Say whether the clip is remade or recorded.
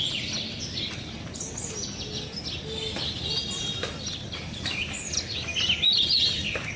recorded